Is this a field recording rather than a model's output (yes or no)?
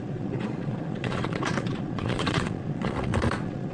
no